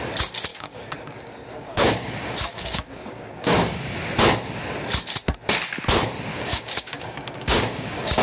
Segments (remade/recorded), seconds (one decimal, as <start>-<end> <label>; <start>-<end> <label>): 0.0-0.5 recorded; 0.5-3.9 remade; 3.9-6.3 recorded; 6.3-8.2 remade

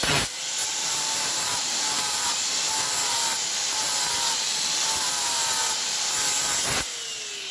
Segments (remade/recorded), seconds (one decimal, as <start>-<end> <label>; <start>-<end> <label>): 0.0-0.6 recorded; 0.6-2.4 remade; 2.4-7.5 recorded

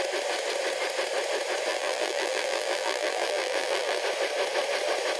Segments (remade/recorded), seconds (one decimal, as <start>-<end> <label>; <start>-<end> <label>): 0.0-1.7 recorded; 1.7-4.0 remade; 4.0-5.2 recorded